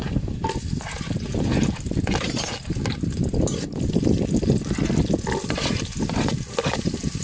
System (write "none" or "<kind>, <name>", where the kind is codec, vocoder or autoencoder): none